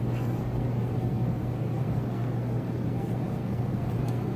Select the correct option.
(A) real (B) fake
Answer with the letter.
B